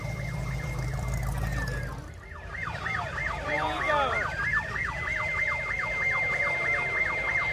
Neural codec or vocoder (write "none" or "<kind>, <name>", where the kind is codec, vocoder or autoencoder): vocoder, BigVGAN v2